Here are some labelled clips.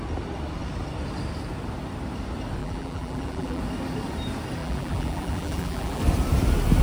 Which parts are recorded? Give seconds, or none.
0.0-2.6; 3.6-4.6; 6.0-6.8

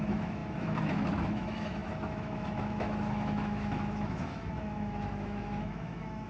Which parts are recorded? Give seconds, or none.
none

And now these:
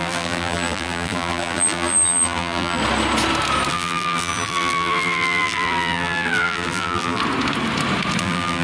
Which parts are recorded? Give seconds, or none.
2.8-3.7; 7.2-8.2

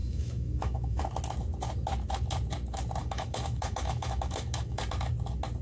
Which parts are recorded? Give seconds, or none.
1.0-3.0; 4.8-5.6

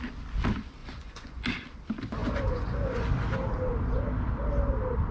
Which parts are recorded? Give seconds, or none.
0.0-0.8; 1.4-2.2; 3.1-5.1